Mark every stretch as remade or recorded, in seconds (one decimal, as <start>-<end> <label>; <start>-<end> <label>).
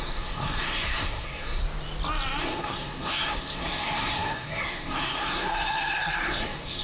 0.0-1.6 remade; 1.6-2.4 recorded; 2.4-6.8 remade